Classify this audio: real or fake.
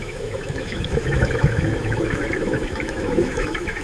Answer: fake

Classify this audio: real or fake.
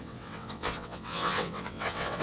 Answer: fake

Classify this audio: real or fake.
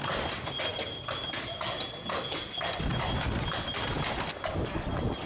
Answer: real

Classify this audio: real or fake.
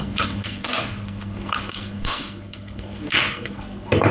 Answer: fake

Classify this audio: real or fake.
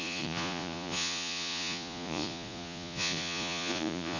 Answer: fake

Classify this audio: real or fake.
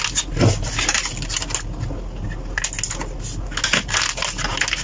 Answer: real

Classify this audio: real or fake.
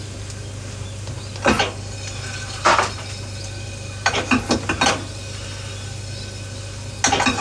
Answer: real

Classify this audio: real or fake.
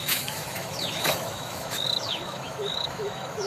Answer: fake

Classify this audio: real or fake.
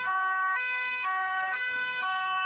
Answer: fake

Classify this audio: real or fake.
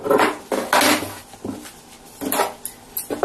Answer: real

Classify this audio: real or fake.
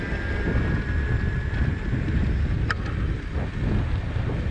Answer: real